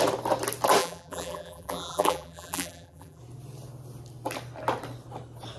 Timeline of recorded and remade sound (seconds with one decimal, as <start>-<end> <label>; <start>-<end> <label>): 0.0-0.8 recorded; 0.8-3.2 remade; 3.2-5.6 recorded